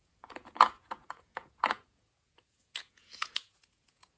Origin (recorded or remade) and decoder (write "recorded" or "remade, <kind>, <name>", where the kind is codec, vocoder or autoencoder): remade, vocoder, Vocos